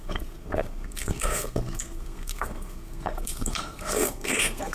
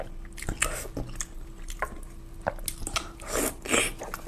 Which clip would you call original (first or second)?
second